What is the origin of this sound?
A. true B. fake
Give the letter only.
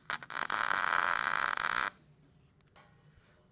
A